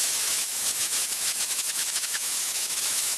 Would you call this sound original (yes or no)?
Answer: no